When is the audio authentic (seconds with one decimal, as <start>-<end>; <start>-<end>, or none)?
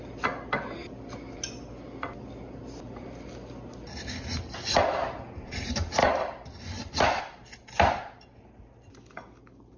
0.0-6.0; 7.2-9.8